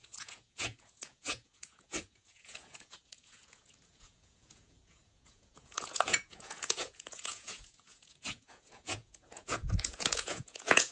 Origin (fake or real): fake